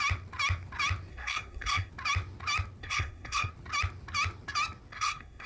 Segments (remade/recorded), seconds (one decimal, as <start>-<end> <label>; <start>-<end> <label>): 0.0-1.1 recorded; 1.1-1.9 remade; 1.9-2.8 recorded; 2.8-3.5 remade; 3.5-4.9 recorded; 4.9-5.5 remade